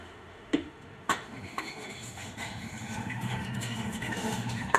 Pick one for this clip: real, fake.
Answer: fake